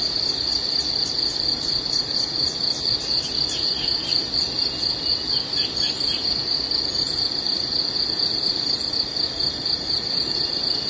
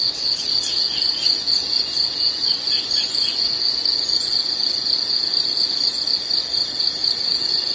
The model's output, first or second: second